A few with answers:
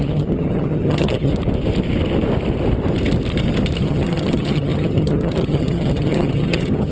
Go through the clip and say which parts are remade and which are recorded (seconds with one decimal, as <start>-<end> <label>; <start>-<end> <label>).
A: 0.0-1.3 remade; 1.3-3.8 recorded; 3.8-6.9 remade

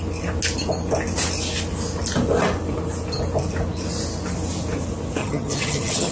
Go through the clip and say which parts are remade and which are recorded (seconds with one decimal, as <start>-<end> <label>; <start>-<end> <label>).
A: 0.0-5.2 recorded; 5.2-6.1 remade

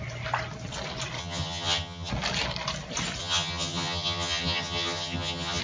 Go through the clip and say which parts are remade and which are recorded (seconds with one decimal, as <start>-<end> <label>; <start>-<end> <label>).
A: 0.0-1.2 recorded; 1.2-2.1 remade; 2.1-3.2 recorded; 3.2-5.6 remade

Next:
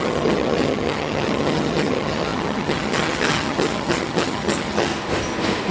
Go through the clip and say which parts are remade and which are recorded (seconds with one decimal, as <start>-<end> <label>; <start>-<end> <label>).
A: 0.0-4.9 remade; 4.9-5.7 recorded

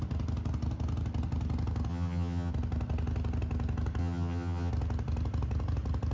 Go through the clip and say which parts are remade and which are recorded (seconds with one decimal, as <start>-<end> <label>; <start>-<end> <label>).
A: 0.0-1.9 recorded; 1.9-2.5 remade; 2.5-4.0 recorded; 4.0-4.7 remade; 4.7-6.1 recorded